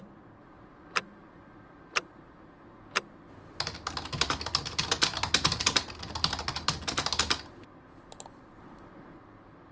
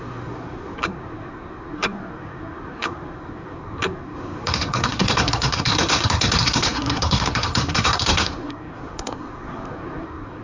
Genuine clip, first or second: first